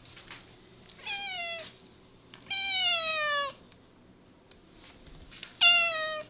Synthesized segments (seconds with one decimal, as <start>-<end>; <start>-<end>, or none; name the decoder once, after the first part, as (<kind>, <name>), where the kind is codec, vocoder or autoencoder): none